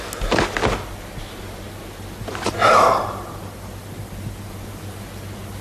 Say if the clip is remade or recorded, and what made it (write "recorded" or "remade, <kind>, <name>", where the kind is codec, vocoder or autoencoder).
recorded